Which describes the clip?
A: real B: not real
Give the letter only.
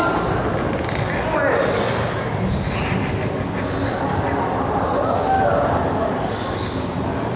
A